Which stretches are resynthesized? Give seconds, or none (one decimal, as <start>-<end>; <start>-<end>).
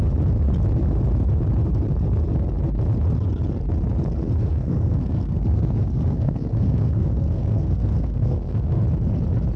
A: 4.4-8.8